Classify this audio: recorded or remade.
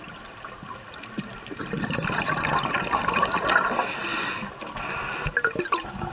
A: recorded